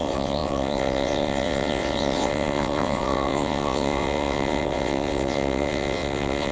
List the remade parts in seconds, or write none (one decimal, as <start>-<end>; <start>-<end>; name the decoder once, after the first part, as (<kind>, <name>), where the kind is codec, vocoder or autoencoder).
0.0-6.5 (vocoder, WaveNeXt)